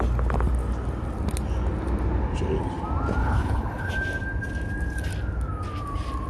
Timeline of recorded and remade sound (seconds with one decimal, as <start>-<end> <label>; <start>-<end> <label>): 0.0-3.2 recorded; 3.2-3.9 remade; 3.9-6.3 recorded